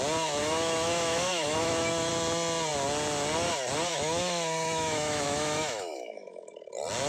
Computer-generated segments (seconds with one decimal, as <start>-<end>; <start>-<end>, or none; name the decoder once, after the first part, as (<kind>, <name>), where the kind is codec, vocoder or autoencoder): 0.4-2.1 (autoencoder, DAC-VAE); 3.9-6.5